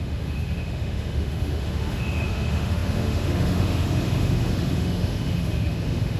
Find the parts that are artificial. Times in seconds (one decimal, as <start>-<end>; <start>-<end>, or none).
0.0-6.2